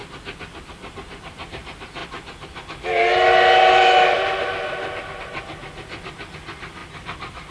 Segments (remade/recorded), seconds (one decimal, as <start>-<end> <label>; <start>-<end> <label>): 0.0-6.8 recorded; 6.8-7.5 remade